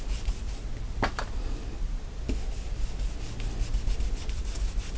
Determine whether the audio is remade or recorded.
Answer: recorded